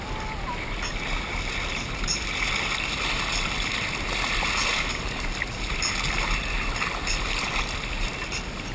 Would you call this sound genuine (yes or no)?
yes